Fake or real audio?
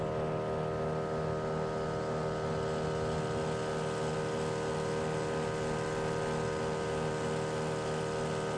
real